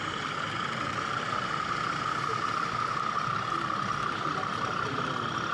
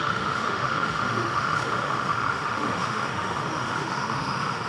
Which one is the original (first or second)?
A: first